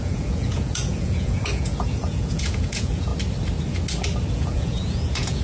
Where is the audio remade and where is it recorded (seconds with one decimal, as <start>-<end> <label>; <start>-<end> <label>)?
0.0-3.1 remade; 3.1-4.3 recorded; 4.3-5.4 remade